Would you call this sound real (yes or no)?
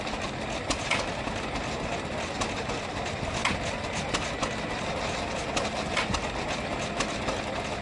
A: yes